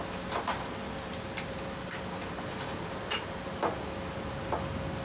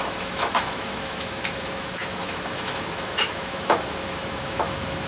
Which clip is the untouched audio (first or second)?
first